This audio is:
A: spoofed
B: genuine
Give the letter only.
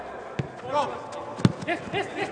B